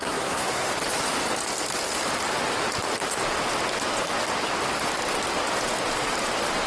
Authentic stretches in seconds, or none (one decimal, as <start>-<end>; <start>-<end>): 0.7-6.7